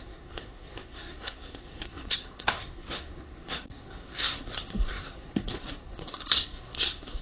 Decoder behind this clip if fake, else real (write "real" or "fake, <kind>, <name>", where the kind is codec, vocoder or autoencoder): fake, codec, SNAC